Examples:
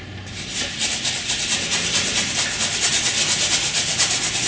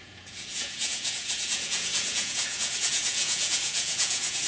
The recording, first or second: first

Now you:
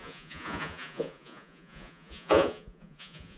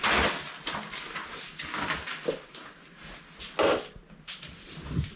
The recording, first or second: second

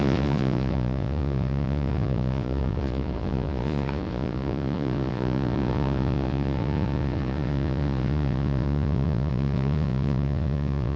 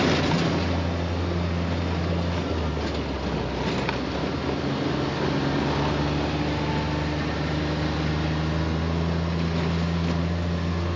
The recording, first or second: second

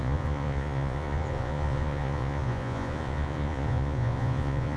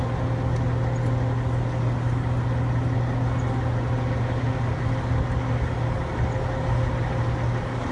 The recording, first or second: second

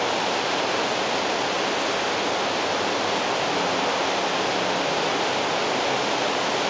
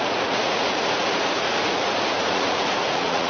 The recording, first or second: first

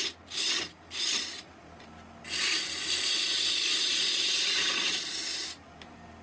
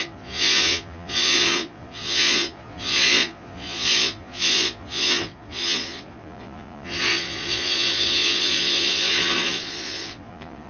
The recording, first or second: first